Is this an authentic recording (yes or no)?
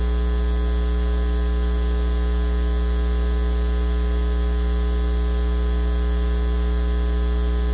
yes